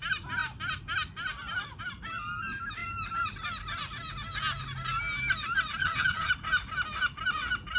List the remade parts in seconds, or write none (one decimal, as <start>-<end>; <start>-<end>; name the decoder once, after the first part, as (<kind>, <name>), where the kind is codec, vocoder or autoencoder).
5.8-6.3 (vocoder, HiFi-GAN)